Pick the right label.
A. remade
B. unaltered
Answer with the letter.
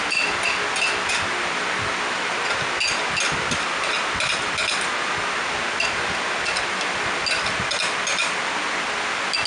B